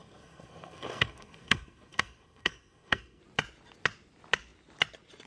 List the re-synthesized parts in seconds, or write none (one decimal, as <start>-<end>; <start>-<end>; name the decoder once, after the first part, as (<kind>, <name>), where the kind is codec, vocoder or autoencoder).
0.0-3.2 (codec, SNAC)